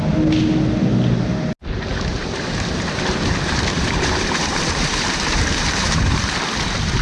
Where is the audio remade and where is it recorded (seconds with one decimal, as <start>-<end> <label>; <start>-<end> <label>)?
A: 0.0-2.1 recorded; 2.1-6.3 remade; 6.3-7.0 recorded

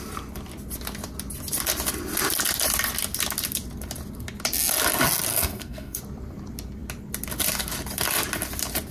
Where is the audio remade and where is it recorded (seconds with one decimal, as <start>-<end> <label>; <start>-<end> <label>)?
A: 0.0-5.3 recorded; 5.3-6.0 remade; 6.0-8.9 recorded